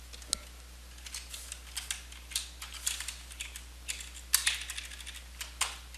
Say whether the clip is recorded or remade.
recorded